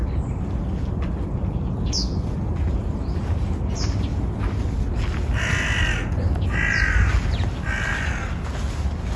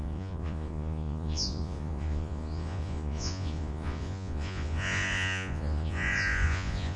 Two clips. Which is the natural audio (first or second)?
first